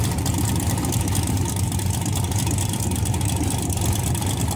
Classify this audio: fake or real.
real